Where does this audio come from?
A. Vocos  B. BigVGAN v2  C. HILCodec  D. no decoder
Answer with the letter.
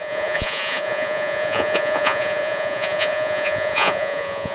A